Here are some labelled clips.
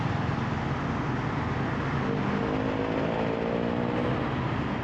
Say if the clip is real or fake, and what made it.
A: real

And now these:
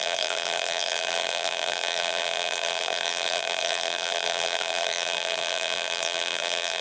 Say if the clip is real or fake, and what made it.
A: fake, vocoder, BigVGAN v2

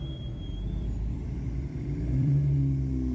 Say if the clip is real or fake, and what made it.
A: fake, vocoder, BigVGAN v2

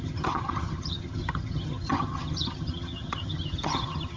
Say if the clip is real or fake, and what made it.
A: fake, vocoder, HiFi-GAN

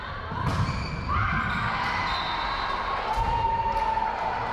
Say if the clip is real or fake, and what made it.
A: real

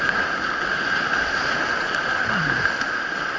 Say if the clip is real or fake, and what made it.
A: real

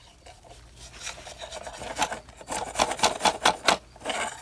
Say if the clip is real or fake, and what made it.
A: real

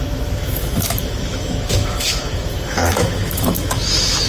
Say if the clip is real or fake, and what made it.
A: fake, autoencoder, DAC-VAE